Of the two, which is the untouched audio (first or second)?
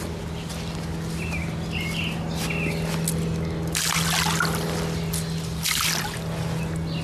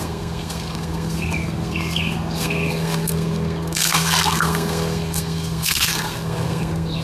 first